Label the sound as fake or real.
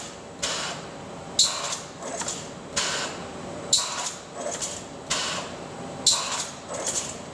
real